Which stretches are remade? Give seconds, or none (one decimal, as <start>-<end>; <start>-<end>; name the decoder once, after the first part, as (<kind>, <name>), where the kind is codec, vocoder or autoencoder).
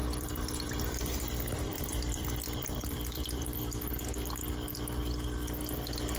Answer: 0.0-3.7 (vocoder, BigVGAN v2)